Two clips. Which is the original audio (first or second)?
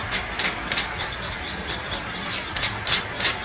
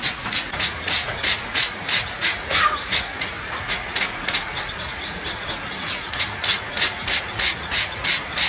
first